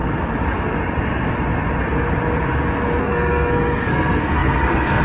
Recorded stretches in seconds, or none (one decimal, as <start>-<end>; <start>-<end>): 0.0-3.0